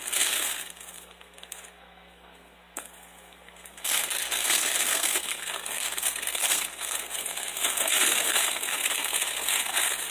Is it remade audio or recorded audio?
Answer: remade